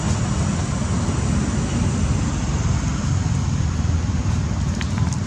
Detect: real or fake real